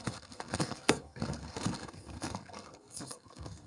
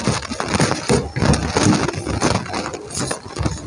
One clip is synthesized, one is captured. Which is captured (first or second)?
second